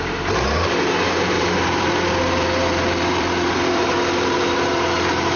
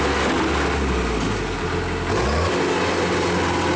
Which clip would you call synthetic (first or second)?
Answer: first